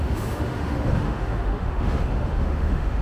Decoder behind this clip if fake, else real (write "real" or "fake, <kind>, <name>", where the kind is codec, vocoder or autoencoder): fake, autoencoder, DAC-VAE